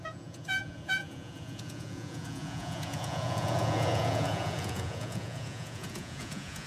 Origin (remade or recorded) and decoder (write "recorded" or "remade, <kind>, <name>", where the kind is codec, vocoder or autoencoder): remade, vocoder, Vocos